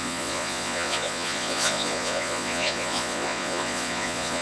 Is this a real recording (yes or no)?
no